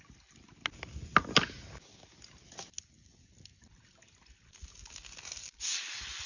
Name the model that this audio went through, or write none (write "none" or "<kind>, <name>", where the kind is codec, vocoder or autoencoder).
none